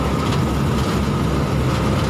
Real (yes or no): yes